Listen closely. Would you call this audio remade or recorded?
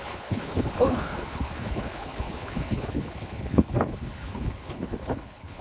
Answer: remade